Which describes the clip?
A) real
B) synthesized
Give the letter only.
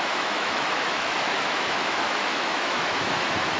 B